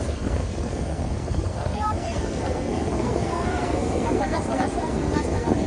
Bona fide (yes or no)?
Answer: no